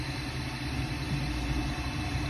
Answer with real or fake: real